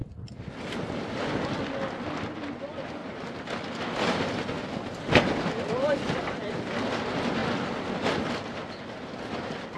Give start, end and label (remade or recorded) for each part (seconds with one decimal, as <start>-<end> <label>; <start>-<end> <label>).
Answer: 0.0-9.8 recorded